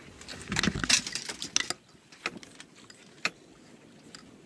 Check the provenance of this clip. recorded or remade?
recorded